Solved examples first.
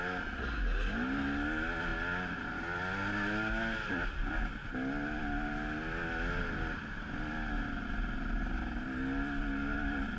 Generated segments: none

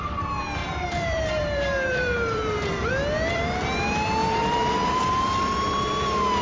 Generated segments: 0.6-2.9; 4.2-5.2

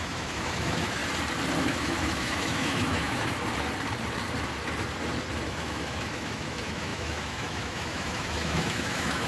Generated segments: 0.0-1.0; 1.6-3.3; 5.5-9.3

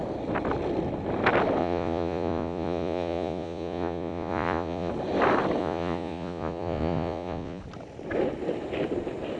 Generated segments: 1.6-4.9; 5.6-7.6

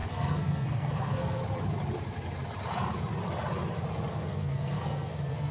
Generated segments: 0.0-1.4; 4.1-5.5

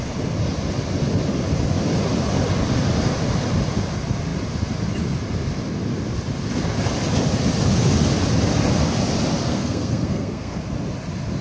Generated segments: 9.5-10.6

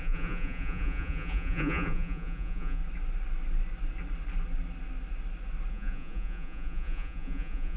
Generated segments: 0.0-2.8; 5.7-7.8

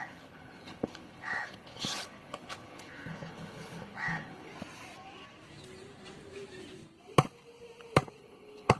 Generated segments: 0.0-4.5; 8.2-8.8